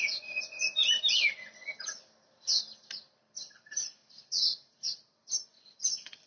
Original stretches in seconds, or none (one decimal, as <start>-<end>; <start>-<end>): 0.8-1.3; 1.9-3.6; 4.0-5.4